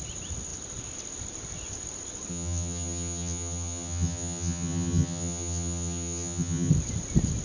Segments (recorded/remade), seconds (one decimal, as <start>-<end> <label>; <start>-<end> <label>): 0.0-2.3 recorded; 2.3-6.7 remade; 6.7-7.4 recorded